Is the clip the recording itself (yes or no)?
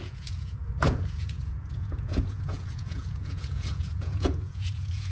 no